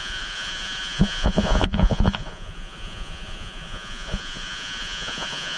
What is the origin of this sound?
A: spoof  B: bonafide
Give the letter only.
A